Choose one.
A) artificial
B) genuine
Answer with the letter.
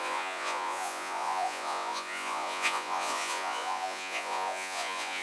A